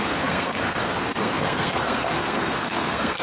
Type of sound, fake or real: fake